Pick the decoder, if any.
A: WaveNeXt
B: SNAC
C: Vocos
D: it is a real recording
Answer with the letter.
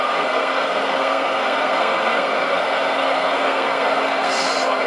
B